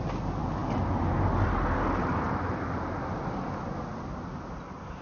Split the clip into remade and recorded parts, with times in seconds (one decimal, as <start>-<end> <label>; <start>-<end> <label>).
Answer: 0.0-5.0 recorded